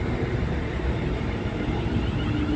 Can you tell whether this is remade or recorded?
recorded